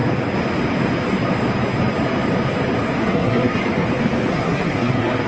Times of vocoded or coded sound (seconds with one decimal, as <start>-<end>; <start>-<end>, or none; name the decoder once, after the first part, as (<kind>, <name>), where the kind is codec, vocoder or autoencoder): 3.0-3.6 (codec, SNAC); 4.3-5.3